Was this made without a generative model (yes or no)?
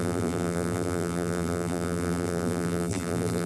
no